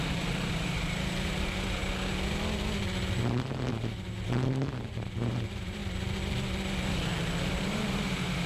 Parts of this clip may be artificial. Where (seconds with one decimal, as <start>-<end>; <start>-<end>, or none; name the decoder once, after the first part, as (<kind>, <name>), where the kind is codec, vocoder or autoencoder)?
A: 0.0-1.8 (vocoder, BigVGAN v2); 3.7-5.8; 7.6-8.5